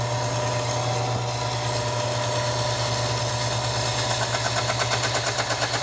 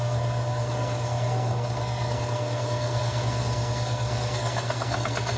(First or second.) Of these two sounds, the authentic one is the first